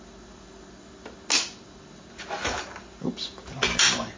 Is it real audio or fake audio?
real